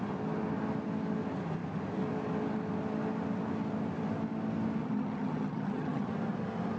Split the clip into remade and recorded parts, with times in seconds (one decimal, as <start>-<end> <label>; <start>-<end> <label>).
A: 0.0-4.8 recorded; 4.8-6.1 remade; 6.1-6.8 recorded